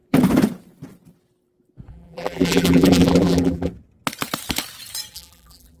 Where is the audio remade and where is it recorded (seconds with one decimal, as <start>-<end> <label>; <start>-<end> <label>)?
0.0-1.9 recorded; 1.9-3.7 remade; 3.7-5.1 recorded; 5.1-5.8 remade